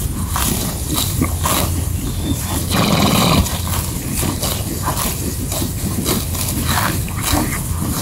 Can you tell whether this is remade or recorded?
recorded